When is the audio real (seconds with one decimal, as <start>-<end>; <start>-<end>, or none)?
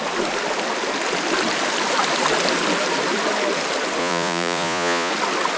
0.0-4.0; 5.1-5.6